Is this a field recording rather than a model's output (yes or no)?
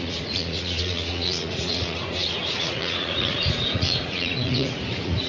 no